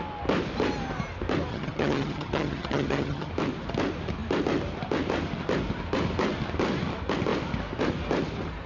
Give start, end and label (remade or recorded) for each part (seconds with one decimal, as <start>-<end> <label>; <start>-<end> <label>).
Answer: 0.0-1.5 recorded; 1.5-3.3 remade; 3.3-8.7 recorded